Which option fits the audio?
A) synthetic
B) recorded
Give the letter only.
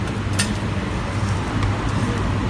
B